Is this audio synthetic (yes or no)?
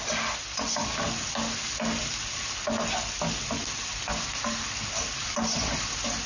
no